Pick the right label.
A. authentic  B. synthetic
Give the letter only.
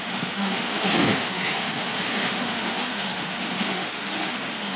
B